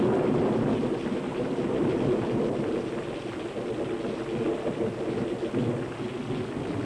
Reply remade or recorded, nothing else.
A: recorded